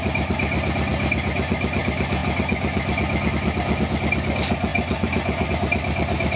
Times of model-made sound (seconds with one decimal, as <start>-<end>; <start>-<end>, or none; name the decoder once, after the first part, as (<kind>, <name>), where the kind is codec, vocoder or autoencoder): none

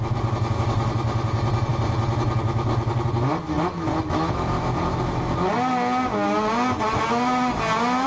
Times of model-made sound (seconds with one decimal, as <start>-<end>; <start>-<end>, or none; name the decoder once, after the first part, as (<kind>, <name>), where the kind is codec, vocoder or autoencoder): none

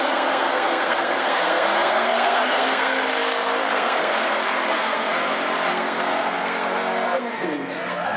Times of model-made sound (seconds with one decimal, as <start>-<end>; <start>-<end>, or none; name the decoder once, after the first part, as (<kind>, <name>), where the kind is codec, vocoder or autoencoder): 0.0-5.2 (codec, SNAC); 5.7-8.2

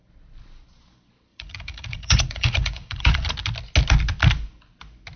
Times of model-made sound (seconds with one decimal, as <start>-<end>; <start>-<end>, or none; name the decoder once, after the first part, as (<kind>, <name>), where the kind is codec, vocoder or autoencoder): 1.3-3.3 (vocoder, Vocos)

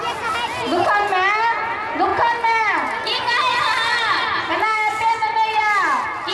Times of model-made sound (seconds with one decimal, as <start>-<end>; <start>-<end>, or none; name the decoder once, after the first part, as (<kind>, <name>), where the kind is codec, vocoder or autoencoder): none

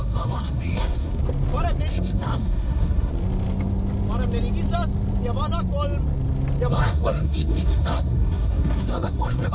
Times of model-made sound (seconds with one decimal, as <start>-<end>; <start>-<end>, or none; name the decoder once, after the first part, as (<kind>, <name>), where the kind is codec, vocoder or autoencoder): 0.0-1.2 (codec, SNAC); 1.9-3.1; 6.7-9.5